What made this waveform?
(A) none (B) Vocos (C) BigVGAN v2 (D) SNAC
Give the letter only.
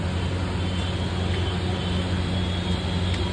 A